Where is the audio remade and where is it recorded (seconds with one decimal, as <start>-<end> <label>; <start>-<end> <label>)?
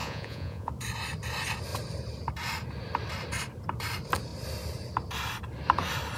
0.0-0.7 remade; 0.7-6.2 recorded